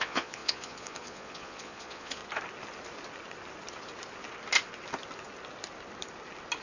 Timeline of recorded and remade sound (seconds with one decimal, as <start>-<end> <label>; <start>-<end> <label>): 0.0-2.2 remade; 2.2-6.6 recorded